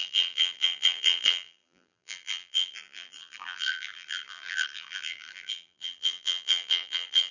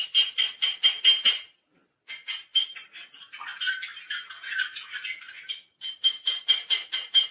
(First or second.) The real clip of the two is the second